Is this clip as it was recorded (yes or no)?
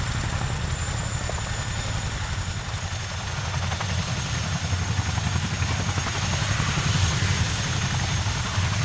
yes